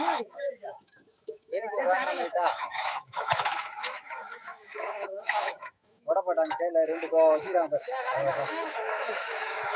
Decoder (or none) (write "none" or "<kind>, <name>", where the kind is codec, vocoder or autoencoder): autoencoder, DAC-VAE